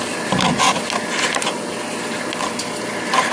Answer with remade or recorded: recorded